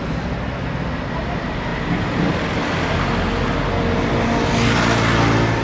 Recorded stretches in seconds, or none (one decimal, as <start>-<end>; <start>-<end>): 0.0-5.6